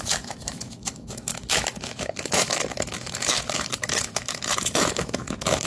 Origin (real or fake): fake